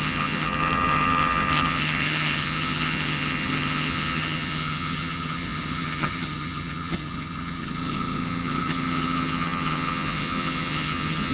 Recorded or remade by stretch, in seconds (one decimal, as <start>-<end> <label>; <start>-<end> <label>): 0.0-11.3 remade